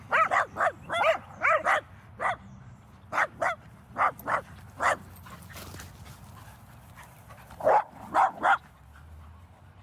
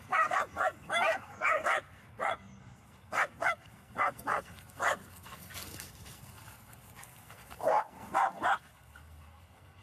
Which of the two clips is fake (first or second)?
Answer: second